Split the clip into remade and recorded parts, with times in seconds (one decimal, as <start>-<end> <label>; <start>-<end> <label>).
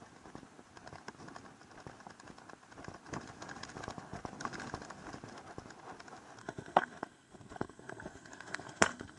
0.0-6.4 recorded; 6.4-9.2 remade